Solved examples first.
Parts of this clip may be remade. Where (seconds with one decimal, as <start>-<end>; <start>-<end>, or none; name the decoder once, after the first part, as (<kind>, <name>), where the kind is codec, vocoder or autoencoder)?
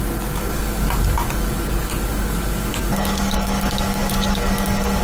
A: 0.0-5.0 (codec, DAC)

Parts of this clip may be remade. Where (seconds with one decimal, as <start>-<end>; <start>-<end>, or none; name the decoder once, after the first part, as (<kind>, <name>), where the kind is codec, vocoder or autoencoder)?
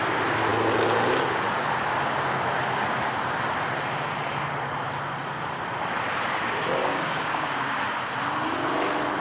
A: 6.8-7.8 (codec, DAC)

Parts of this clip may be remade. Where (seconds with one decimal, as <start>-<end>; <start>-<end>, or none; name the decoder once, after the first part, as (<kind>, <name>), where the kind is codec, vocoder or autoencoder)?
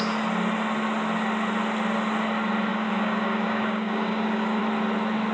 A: 2.7-4.6 (codec, DAC)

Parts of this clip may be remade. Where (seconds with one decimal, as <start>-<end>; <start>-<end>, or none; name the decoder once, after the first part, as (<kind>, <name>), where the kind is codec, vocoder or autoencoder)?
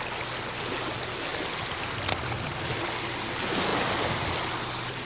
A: none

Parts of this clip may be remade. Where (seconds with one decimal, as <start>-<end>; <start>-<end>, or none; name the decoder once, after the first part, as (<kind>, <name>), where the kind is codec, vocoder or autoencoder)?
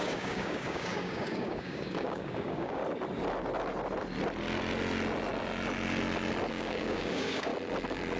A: 0.0-2.8 (codec, DAC); 6.5-7.5